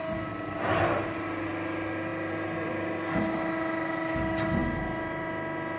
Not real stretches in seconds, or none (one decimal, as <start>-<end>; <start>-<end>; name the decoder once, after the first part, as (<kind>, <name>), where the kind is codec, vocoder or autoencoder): 2.1-2.7 (vocoder, BigVGAN v2); 4.6-5.3